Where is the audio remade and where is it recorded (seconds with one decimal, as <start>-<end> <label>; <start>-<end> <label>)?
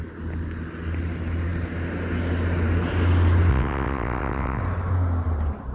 0.0-3.5 recorded; 3.5-4.6 remade; 4.6-5.7 recorded